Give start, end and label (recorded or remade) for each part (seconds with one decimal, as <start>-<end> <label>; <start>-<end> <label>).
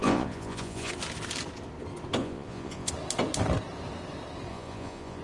0.0-0.9 remade; 0.9-2.2 recorded; 2.2-2.9 remade; 2.9-4.5 recorded; 4.5-5.2 remade